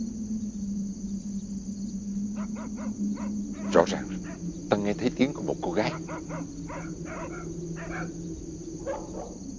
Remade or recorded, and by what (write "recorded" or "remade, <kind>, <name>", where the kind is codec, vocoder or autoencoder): recorded